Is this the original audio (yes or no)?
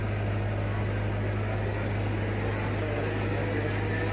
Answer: yes